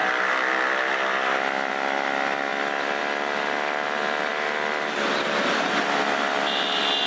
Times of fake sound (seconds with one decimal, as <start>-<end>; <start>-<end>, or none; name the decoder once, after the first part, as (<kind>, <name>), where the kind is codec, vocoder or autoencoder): none

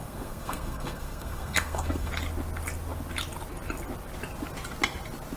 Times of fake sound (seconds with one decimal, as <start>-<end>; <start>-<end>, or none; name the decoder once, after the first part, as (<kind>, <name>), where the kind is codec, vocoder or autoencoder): 0.0-2.1 (codec, SNAC)

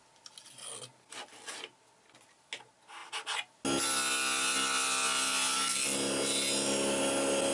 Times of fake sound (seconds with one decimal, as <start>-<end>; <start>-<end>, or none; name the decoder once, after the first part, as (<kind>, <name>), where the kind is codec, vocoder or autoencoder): none

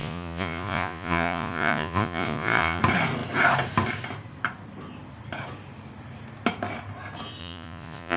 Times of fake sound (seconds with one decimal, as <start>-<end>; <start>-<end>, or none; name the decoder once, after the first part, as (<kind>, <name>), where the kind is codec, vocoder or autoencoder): 0.0-2.8 (vocoder, Vocos); 7.4-8.2

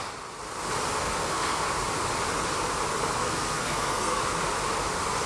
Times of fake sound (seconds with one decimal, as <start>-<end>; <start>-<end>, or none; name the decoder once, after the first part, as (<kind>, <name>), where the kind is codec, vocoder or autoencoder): 1.0-1.7 (codec, SNAC); 3.2-4.2